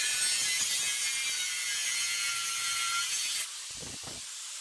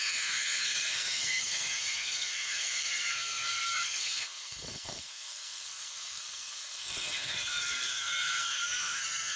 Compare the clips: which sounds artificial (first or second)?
second